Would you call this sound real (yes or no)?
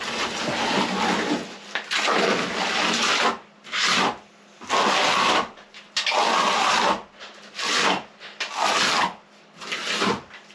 yes